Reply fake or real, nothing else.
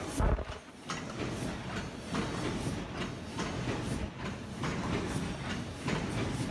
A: real